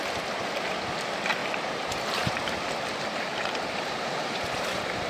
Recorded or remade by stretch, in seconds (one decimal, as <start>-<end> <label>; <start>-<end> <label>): 0.0-1.4 recorded; 1.4-2.3 remade; 2.3-3.3 recorded; 3.3-5.1 remade